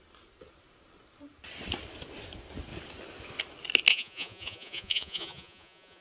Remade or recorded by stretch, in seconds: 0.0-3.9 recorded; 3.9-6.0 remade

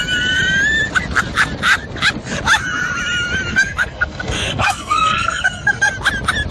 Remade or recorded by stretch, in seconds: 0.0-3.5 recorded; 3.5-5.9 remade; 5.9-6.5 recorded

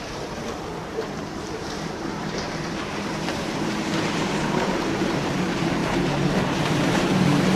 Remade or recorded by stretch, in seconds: 0.0-7.6 remade

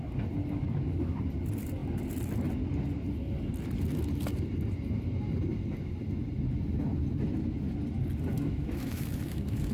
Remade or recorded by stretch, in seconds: 0.0-0.4 recorded; 0.4-1.2 remade; 1.2-8.3 recorded; 8.3-9.7 remade